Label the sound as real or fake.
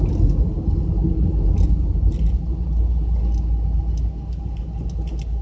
real